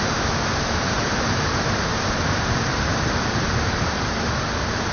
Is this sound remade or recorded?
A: remade